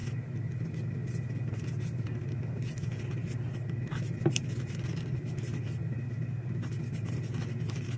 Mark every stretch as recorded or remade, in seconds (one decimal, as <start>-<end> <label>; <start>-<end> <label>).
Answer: 0.0-8.0 recorded